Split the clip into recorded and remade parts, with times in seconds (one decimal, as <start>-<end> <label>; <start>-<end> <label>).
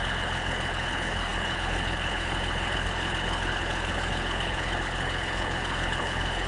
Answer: 0.0-6.5 remade